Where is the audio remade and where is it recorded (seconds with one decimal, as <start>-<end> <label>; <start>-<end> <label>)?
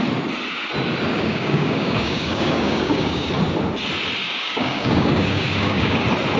0.0-1.1 recorded; 1.1-3.3 remade; 3.3-4.2 recorded; 4.2-6.0 remade; 6.0-6.4 recorded